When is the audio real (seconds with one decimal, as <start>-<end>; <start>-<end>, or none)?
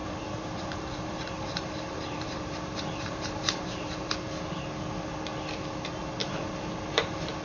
4.1-7.4